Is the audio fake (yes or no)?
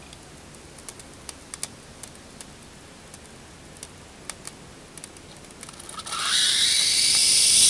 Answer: no